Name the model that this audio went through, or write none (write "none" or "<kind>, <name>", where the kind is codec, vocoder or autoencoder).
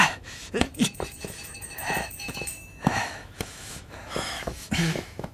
autoencoder, DAC-VAE